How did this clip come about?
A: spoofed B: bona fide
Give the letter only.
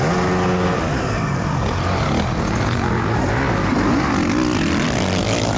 B